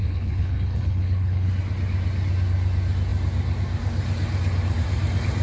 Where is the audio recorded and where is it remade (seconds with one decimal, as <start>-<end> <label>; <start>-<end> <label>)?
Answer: 0.0-1.5 remade; 1.5-5.4 recorded